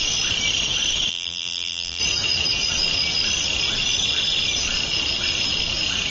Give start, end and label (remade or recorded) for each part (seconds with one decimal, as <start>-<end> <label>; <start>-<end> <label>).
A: 0.0-1.1 recorded; 1.1-2.0 remade; 2.0-6.1 recorded